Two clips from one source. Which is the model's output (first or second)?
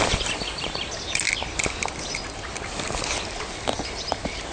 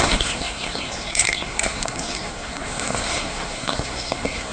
second